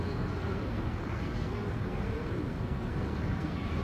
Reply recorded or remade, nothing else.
remade